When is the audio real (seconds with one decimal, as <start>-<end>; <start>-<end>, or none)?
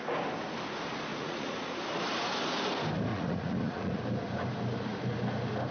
0.0-1.1; 1.8-3.1; 4.0-5.7